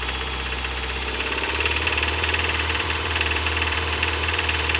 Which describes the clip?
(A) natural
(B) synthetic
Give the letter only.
B